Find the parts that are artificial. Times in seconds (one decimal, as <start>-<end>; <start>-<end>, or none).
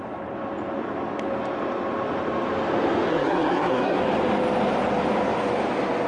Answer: 3.1-4.0